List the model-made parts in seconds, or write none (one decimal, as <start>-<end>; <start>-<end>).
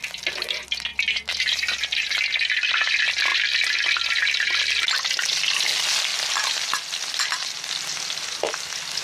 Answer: 0.9-2.2; 6.1-6.6